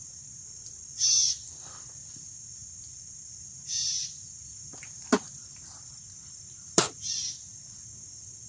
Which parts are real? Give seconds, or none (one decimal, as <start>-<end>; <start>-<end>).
0.0-1.4; 2.1-2.6; 3.4-4.7; 6.9-8.5